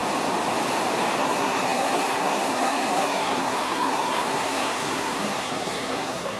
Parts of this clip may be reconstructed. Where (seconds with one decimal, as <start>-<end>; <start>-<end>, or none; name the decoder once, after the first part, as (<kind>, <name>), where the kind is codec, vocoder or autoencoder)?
1.2-6.4 (codec, SNAC)